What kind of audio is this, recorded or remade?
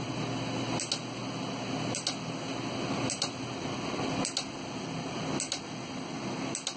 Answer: recorded